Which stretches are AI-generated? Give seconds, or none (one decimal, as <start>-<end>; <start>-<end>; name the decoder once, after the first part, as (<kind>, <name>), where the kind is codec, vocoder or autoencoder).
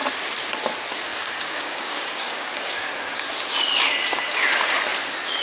1.1-2.9 (codec, DAC)